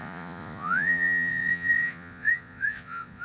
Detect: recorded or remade remade